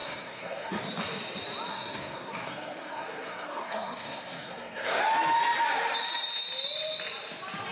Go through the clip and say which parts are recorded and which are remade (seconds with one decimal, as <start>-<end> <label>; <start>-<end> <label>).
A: 0.0-0.8 remade; 0.8-1.7 recorded; 1.7-5.0 remade; 5.0-7.7 recorded